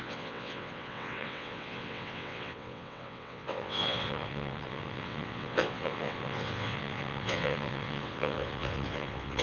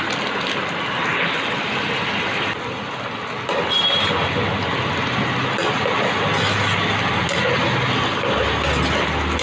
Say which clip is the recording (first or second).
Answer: second